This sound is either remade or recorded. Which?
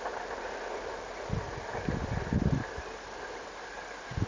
recorded